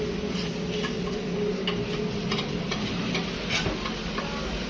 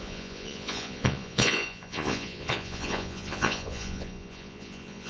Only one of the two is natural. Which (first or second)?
first